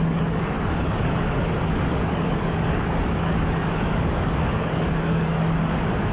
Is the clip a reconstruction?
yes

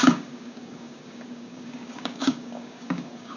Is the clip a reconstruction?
yes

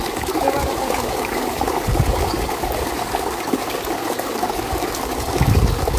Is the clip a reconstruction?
yes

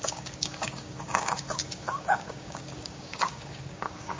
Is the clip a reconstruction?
yes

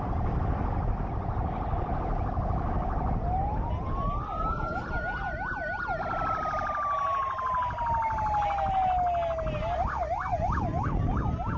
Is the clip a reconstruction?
no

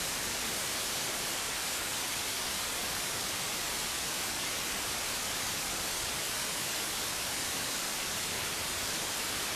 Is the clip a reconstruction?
yes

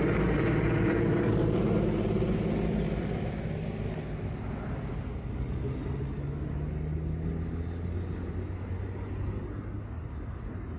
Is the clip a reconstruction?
no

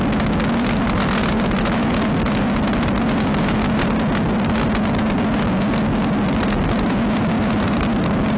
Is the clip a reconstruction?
no